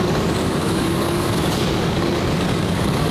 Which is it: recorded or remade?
remade